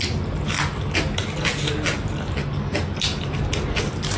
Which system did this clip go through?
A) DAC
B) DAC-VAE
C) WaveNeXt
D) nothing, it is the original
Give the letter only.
D